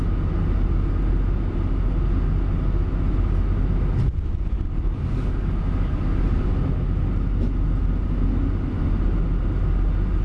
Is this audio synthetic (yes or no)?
no